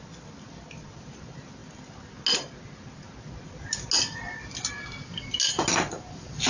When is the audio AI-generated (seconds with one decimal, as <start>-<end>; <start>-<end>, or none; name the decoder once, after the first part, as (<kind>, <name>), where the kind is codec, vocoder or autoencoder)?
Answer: none